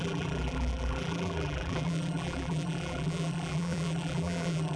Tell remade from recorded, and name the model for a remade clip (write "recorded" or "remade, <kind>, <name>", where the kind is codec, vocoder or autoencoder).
remade, vocoder, BigVGAN v2